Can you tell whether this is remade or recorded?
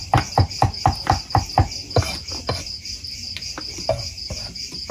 recorded